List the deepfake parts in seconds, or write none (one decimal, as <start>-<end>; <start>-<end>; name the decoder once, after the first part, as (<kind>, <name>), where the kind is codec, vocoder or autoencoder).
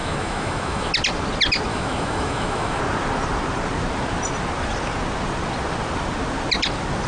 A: 0.0-0.9 (autoencoder, DAC-VAE); 1.7-2.8